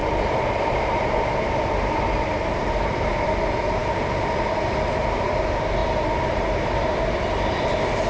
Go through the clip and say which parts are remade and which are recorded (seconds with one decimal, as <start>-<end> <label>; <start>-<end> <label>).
0.0-3.3 remade; 3.3-5.8 recorded; 5.8-7.0 remade; 7.0-8.1 recorded